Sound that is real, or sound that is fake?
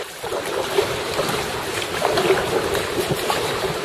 fake